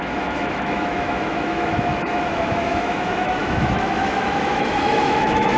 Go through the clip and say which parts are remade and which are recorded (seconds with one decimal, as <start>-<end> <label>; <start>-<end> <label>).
0.0-5.6 remade